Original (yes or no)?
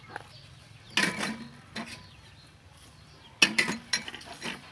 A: yes